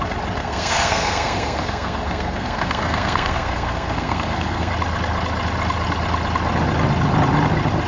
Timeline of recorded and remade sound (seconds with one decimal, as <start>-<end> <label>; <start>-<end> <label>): 0.0-0.4 recorded; 0.4-4.7 remade; 4.7-7.9 recorded